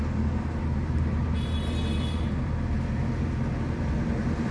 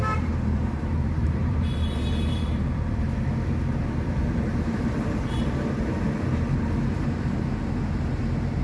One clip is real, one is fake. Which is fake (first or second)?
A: second